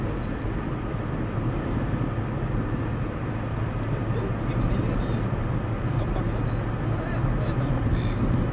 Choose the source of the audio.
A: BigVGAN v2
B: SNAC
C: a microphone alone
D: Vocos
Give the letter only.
C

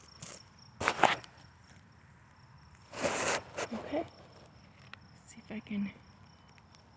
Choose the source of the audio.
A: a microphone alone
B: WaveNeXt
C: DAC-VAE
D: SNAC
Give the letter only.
A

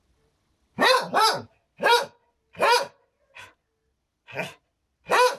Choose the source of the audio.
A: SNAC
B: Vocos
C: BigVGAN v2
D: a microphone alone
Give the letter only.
D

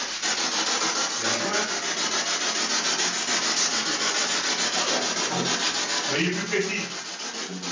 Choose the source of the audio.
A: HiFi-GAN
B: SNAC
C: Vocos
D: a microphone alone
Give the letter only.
D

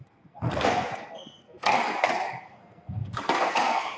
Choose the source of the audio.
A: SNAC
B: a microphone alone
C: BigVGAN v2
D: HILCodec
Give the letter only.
A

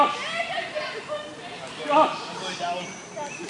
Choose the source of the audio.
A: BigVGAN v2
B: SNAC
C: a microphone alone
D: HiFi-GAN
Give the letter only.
C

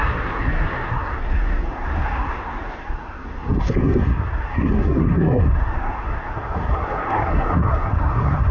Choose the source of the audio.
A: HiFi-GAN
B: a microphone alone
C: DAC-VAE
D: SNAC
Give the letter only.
D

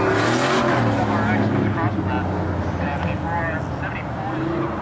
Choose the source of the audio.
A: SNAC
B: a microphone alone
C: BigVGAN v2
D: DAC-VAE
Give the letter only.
B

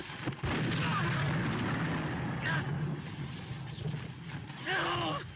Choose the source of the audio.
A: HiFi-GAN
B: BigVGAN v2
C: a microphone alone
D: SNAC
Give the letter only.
C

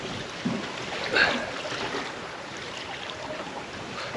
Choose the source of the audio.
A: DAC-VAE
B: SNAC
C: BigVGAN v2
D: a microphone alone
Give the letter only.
D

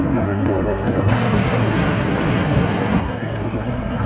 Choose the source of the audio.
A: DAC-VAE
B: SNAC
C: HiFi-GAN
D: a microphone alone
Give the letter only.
B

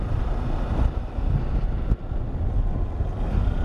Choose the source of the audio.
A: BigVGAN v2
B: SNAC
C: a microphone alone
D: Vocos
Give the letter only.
C